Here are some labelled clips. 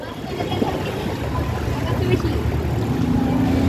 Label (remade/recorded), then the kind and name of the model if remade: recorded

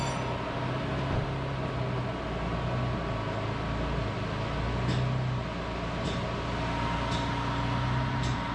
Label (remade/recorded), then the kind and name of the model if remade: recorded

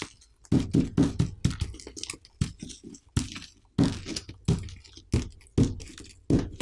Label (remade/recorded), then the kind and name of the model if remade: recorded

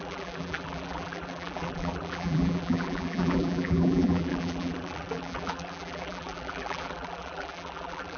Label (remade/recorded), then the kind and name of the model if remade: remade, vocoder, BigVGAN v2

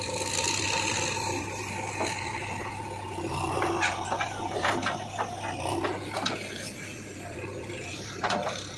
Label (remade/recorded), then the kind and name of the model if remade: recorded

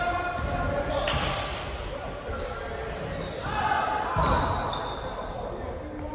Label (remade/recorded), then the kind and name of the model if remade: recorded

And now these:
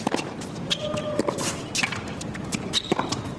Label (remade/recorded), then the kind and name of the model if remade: remade, vocoder, BigVGAN v2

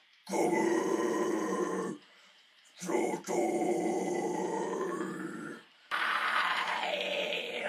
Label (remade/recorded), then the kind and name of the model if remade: remade, vocoder, BigVGAN v2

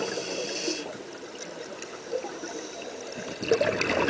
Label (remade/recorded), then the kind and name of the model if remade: recorded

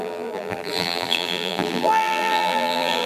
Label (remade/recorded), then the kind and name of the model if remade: remade, vocoder, BigVGAN v2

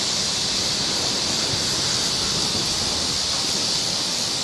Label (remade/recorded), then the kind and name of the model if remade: recorded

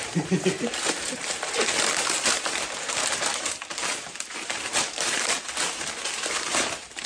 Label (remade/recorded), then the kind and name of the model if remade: remade, vocoder, BigVGAN v2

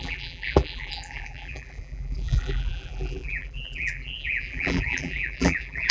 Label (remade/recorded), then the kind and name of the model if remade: remade, vocoder, BigVGAN v2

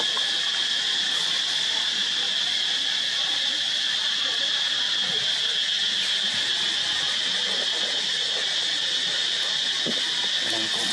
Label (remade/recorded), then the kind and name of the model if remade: recorded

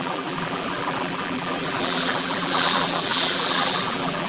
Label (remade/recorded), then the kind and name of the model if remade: remade, vocoder, BigVGAN v2